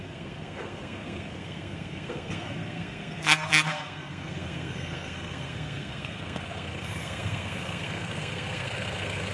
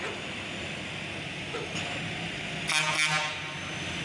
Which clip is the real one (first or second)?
second